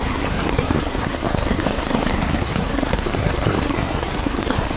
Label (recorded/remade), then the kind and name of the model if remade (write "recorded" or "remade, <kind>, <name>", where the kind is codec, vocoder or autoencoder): remade, codec, SNAC